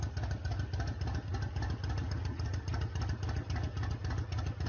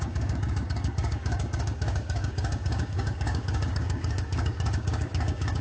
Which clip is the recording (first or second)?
first